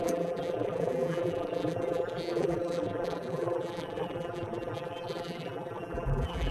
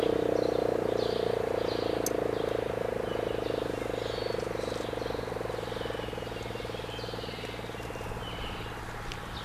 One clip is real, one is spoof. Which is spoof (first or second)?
first